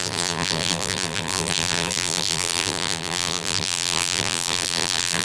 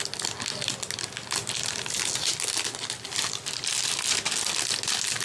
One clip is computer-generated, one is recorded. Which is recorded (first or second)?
second